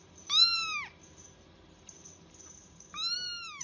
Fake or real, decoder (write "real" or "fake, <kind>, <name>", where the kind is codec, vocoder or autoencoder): fake, vocoder, BigVGAN v2